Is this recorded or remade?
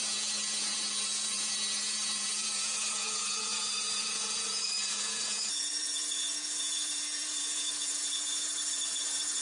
remade